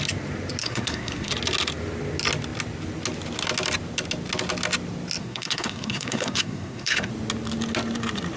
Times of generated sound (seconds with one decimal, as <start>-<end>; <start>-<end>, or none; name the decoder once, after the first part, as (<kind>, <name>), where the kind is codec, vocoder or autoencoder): 0.6-1.3 (codec, SNAC); 5.2-7.1